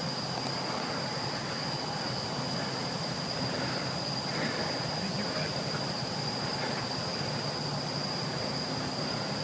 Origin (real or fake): real